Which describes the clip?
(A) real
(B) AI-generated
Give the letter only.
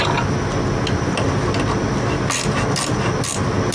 A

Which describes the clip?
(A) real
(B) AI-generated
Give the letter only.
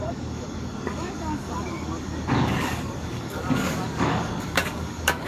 B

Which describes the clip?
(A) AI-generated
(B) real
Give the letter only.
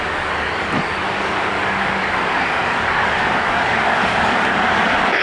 A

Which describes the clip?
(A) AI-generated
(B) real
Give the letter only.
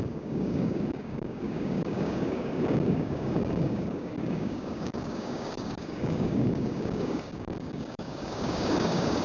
A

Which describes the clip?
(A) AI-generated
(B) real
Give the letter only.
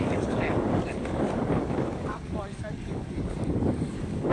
A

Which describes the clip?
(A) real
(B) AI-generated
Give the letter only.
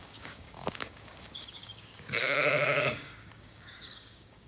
B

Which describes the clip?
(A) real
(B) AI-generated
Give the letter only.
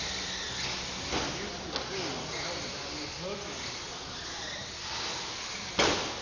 A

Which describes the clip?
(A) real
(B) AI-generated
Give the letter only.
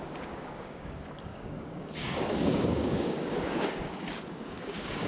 B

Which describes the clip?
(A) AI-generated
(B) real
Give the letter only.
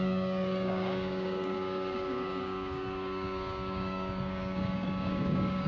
A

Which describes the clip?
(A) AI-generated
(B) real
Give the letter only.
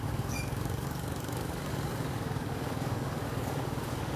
A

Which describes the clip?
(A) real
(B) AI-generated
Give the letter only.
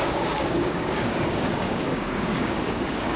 B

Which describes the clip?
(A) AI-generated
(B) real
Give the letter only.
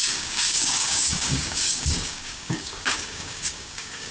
A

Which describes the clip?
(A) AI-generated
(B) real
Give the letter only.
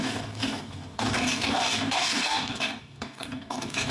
A